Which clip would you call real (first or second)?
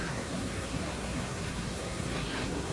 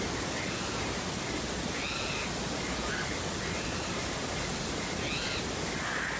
second